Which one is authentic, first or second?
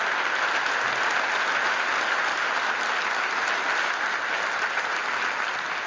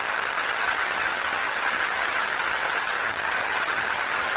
first